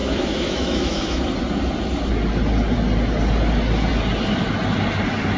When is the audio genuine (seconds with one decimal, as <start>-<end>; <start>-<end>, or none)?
1.2-5.4